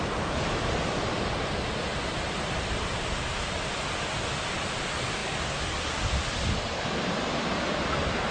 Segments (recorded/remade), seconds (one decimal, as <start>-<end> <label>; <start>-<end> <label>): 0.0-1.9 recorded; 1.9-3.2 remade; 3.2-8.3 recorded

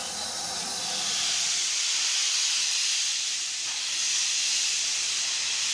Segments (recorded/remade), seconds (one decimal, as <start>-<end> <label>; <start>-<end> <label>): 0.0-5.7 recorded

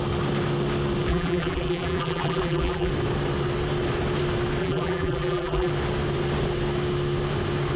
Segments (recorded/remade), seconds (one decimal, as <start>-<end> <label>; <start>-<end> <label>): 0.0-1.1 recorded; 1.1-2.9 remade; 2.9-4.6 recorded; 4.6-5.7 remade; 5.7-7.8 recorded

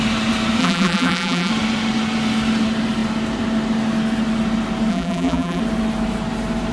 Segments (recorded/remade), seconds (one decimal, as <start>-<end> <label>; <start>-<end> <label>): 0.0-0.6 recorded; 0.6-1.5 remade; 1.5-4.9 recorded; 4.9-5.6 remade; 5.6-6.7 recorded